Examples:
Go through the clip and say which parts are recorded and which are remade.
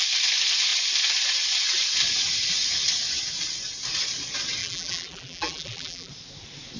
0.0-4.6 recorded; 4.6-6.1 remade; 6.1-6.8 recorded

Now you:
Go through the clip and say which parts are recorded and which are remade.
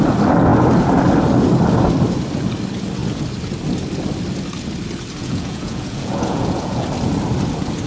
0.0-5.2 recorded; 5.2-6.9 remade; 6.9-7.9 recorded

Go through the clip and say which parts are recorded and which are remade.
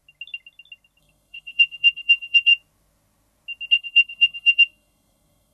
0.0-1.0 recorded; 1.0-2.5 remade; 2.5-3.7 recorded; 3.7-5.5 remade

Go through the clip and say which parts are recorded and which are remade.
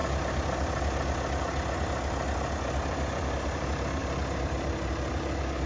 0.0-5.7 recorded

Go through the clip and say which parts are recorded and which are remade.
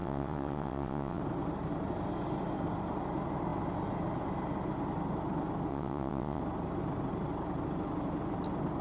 0.0-1.2 remade; 1.2-5.7 recorded; 5.7-6.4 remade; 6.4-8.8 recorded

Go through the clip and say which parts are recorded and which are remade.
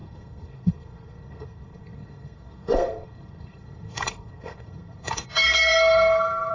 0.0-6.5 remade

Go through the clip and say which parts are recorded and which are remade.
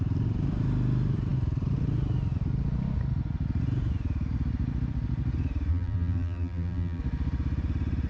0.0-5.7 recorded; 5.7-7.0 remade; 7.0-8.1 recorded